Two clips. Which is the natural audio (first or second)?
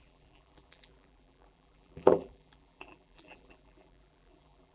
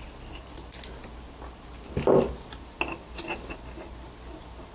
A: second